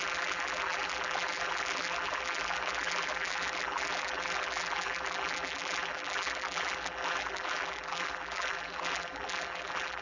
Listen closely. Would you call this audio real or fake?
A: fake